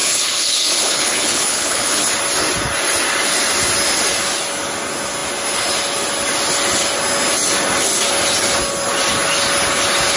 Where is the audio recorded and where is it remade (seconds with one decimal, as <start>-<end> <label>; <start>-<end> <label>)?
0.0-2.1 remade; 2.1-10.2 recorded